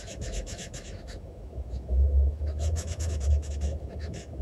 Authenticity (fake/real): fake